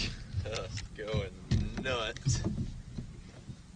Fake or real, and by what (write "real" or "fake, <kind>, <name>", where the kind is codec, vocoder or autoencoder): real